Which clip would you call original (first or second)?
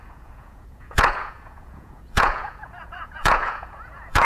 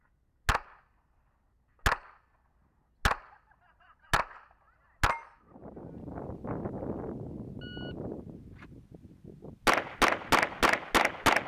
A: second